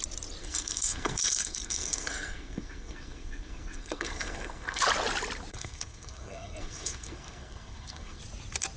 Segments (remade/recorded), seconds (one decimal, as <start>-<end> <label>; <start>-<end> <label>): 0.0-0.4 recorded; 0.4-4.8 remade; 4.8-5.5 recorded; 5.5-8.2 remade; 8.2-8.8 recorded